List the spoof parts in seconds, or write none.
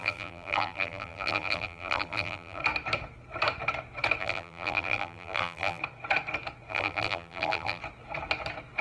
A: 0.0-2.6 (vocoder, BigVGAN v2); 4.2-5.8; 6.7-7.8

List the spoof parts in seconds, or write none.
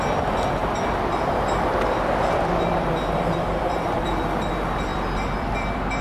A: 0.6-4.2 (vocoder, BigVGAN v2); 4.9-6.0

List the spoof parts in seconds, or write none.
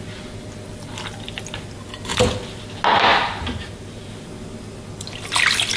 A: 3.1-4.1 (vocoder, BigVGAN v2)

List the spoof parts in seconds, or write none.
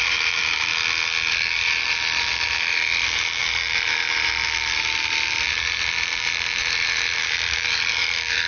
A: 0.0-0.7 (vocoder, BigVGAN v2); 1.3-8.5